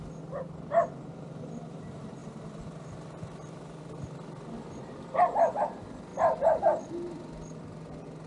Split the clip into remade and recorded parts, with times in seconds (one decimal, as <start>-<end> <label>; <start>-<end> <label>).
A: 0.0-2.2 recorded; 2.2-3.8 remade; 3.8-8.3 recorded